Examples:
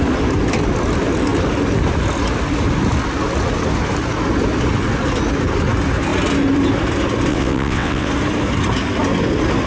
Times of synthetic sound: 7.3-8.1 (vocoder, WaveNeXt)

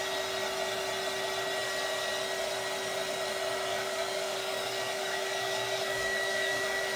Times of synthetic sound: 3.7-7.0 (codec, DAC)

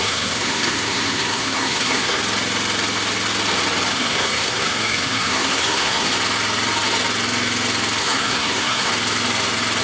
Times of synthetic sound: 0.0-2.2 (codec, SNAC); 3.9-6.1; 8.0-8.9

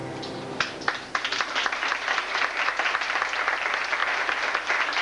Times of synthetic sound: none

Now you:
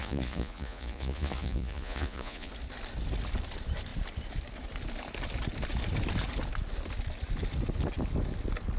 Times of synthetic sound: 0.0-2.5 (vocoder, Vocos)